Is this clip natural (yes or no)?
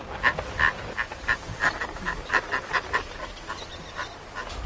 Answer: yes